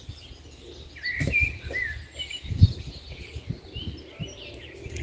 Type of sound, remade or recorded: recorded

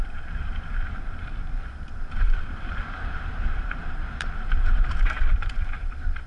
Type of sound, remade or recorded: remade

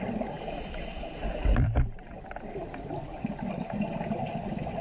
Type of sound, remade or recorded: remade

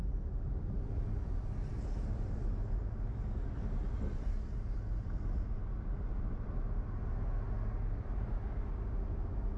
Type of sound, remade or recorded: recorded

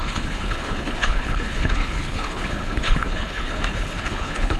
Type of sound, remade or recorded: remade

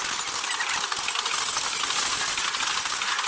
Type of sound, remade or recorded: recorded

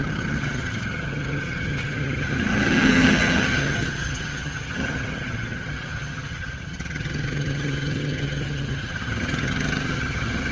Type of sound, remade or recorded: remade